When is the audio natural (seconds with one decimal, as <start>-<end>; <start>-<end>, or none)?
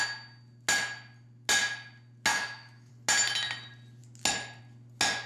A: 0.0-2.3; 2.9-5.3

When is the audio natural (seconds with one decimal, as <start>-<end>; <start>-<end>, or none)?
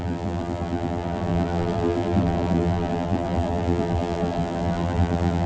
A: none